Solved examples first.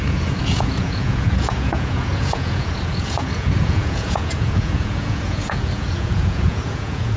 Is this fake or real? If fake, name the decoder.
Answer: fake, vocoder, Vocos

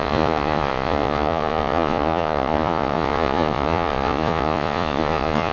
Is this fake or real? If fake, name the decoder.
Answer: fake, vocoder, Vocos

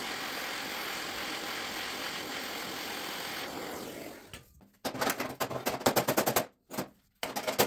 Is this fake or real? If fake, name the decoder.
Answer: real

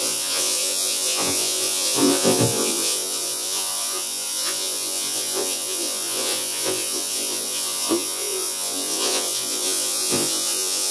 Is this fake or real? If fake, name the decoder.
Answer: fake, vocoder, Vocos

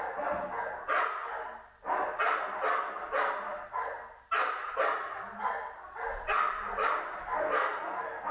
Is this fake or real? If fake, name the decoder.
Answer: real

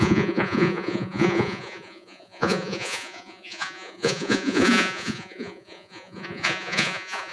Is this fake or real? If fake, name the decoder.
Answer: fake, vocoder, Vocos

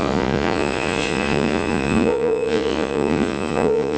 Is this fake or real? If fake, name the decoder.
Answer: fake, vocoder, Vocos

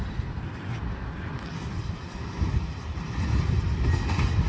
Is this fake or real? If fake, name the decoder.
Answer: real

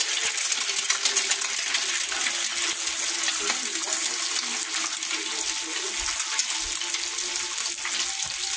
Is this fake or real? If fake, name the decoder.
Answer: real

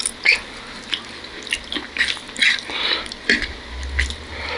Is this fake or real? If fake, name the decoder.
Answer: real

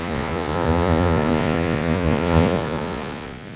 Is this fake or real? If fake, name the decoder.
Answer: fake, vocoder, Vocos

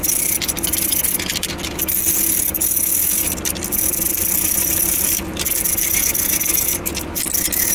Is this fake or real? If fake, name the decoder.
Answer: real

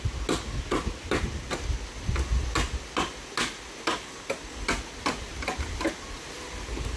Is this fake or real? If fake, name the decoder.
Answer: real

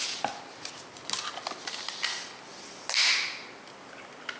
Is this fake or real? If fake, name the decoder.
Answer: real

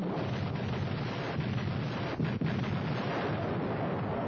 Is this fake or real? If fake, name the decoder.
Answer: real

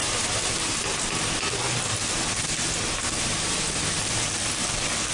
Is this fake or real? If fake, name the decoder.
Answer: real